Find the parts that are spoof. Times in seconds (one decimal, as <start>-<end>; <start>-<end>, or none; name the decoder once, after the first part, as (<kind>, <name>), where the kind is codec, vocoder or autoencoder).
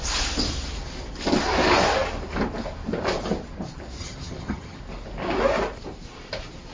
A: 4.0-4.8 (vocoder, HiFi-GAN)